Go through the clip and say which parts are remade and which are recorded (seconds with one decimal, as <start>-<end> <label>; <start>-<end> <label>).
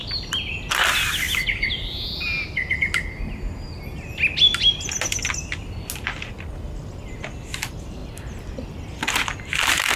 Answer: 0.0-10.0 recorded